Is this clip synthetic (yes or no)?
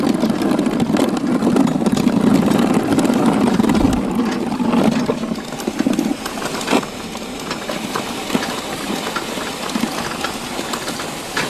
no